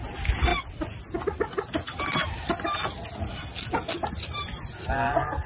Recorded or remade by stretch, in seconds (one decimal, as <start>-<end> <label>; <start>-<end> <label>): 0.0-5.5 recorded